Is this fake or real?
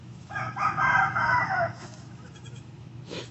fake